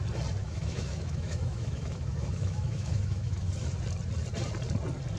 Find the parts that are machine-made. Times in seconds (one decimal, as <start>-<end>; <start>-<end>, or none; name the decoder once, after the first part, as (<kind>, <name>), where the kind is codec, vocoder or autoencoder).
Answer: 0.4-3.5 (autoencoder, DAC-VAE)